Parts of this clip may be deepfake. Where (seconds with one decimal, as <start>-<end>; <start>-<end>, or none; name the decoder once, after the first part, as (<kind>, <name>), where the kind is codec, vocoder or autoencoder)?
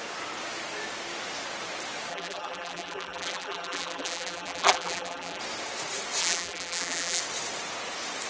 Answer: 2.1-5.4 (vocoder, BigVGAN v2); 6.2-7.2